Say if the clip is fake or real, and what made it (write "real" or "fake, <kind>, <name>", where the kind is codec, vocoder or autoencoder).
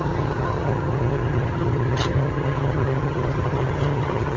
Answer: fake, vocoder, HiFi-GAN